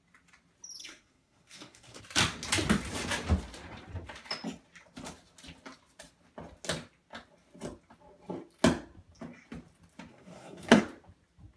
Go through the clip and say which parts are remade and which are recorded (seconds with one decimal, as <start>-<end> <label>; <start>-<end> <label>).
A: 0.0-0.8 recorded; 0.8-2.0 remade; 2.0-10.1 recorded; 10.1-10.8 remade; 10.8-11.6 recorded